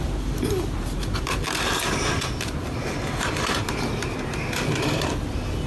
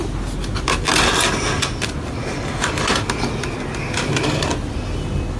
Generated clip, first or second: first